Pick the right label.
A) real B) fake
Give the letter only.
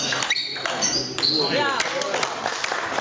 A